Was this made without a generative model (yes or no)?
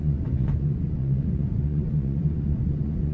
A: no